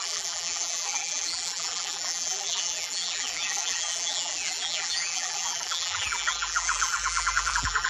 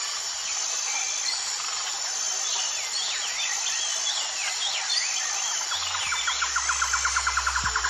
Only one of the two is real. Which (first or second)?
second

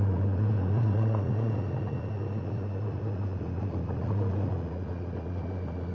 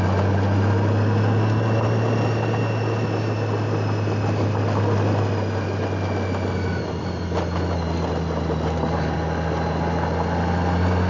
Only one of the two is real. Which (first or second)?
second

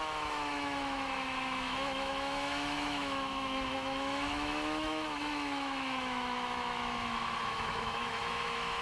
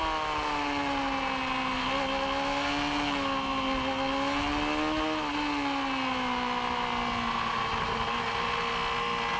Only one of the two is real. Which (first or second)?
second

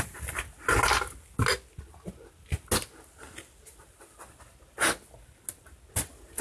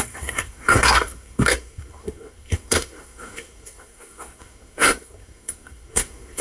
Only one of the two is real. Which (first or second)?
first